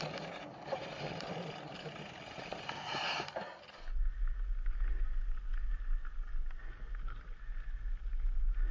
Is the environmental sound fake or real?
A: real